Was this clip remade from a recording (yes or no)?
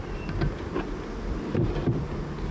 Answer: no